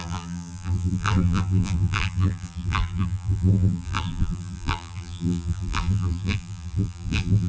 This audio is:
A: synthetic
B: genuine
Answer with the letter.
A